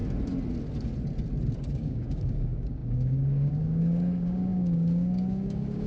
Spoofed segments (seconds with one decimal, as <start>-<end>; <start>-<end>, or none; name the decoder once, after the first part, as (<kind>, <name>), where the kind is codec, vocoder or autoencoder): 1.7-5.9 (codec, DAC)